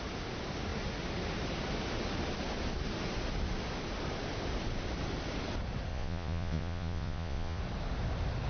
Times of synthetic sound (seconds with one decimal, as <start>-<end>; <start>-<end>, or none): 5.9-7.6